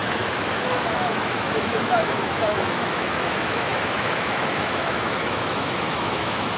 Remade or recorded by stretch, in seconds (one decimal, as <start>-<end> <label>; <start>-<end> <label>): 0.0-6.6 remade